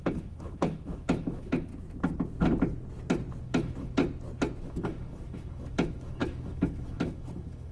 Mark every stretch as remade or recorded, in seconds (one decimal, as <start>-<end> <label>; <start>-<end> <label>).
0.0-1.7 remade; 1.7-3.4 recorded; 3.4-4.0 remade; 4.0-4.6 recorded; 4.6-7.7 remade